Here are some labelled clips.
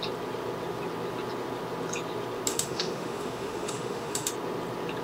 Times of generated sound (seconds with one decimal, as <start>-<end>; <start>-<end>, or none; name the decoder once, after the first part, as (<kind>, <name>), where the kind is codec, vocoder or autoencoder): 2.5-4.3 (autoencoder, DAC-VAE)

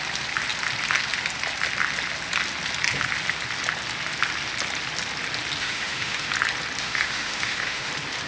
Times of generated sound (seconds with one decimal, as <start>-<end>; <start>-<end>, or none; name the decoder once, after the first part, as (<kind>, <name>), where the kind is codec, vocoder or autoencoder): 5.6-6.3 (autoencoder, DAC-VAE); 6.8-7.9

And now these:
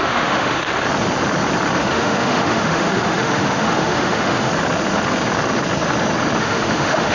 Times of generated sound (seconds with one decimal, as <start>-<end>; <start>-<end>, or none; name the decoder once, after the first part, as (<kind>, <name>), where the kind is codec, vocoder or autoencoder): 0.0-0.7 (autoencoder, DAC-VAE); 1.8-4.5; 6.4-7.1

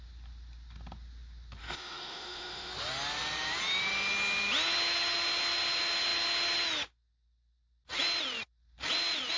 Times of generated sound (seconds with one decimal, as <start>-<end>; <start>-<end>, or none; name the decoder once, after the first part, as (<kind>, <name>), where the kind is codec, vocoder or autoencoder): 1.6-2.7 (autoencoder, DAC-VAE)

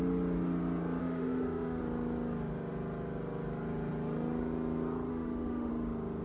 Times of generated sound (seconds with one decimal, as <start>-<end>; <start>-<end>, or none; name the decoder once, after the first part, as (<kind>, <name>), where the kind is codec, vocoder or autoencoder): 1.0-1.8 (autoencoder, DAC-VAE); 5.1-5.7

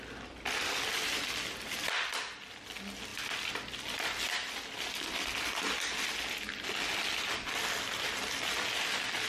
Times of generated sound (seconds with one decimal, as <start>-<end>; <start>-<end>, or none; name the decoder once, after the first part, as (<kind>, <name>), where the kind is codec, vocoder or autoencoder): none